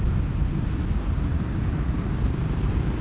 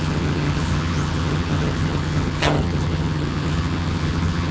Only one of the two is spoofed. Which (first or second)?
second